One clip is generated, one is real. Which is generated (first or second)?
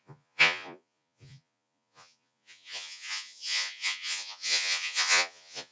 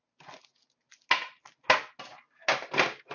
first